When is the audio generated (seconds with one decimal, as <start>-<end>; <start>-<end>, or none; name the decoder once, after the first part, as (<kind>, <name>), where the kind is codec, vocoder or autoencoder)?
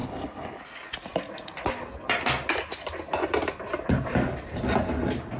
0.0-0.6 (codec, HILCodec)